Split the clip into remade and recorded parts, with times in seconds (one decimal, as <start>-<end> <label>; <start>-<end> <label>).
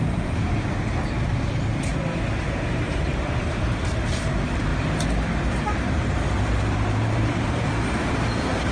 0.0-1.9 remade; 1.9-2.4 recorded; 2.4-4.7 remade; 4.7-5.5 recorded; 5.5-8.7 remade